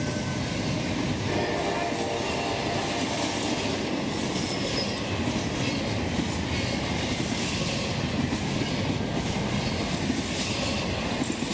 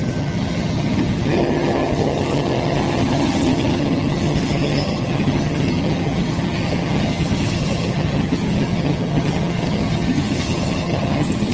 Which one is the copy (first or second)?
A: second